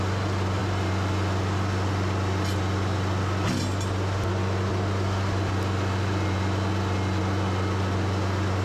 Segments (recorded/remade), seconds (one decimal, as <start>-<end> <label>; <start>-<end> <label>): 0.0-8.6 recorded